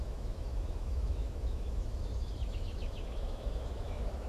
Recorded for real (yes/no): no